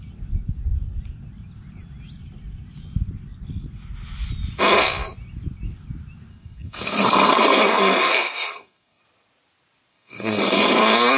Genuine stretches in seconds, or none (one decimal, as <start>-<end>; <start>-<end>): 0.0-6.3; 9.0-9.9; 10.6-11.2